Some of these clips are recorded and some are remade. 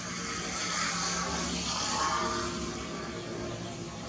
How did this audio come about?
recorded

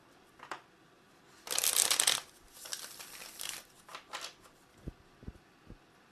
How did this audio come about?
recorded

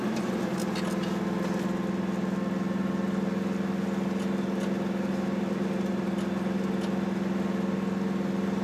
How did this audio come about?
recorded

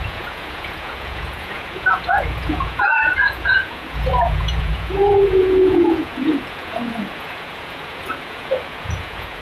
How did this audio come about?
remade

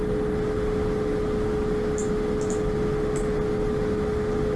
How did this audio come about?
recorded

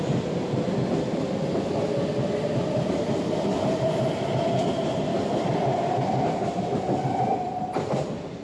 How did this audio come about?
recorded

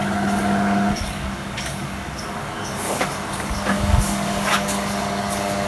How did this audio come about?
remade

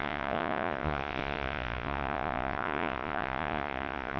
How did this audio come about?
remade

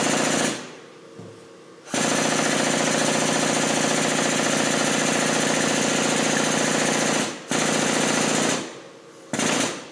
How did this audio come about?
recorded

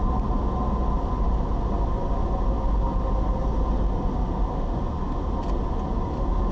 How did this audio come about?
recorded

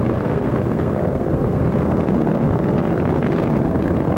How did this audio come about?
remade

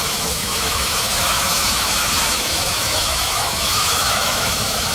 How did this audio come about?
remade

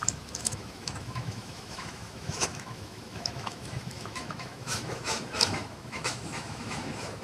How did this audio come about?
remade